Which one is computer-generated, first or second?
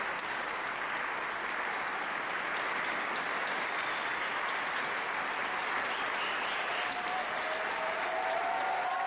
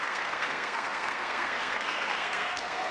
second